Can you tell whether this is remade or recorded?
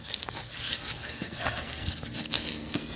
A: remade